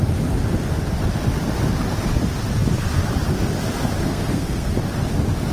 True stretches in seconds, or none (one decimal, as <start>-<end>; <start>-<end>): 0.0-4.0; 4.7-5.5